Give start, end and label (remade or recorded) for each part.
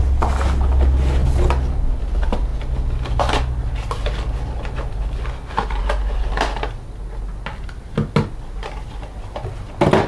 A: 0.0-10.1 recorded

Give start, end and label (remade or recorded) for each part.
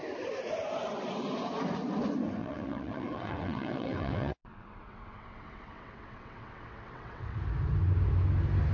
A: 0.0-2.4 recorded; 2.4-7.4 remade; 7.4-8.7 recorded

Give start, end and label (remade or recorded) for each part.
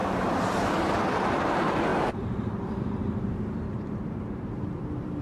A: 0.0-0.7 remade; 0.7-1.9 recorded; 1.9-5.2 remade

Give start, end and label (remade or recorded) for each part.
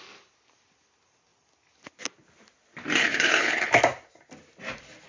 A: 0.0-3.0 recorded; 3.0-3.8 remade; 3.8-5.1 recorded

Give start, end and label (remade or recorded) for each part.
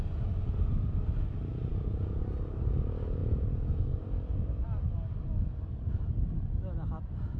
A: 0.0-1.7 recorded; 1.7-2.2 remade; 2.2-3.2 recorded; 3.2-3.8 remade; 3.8-7.4 recorded